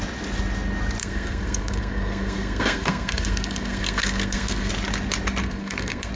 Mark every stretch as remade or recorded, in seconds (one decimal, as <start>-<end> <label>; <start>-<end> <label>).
0.0-1.0 recorded; 1.0-4.7 remade; 4.7-5.4 recorded; 5.4-6.1 remade